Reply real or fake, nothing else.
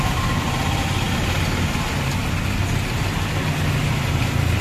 real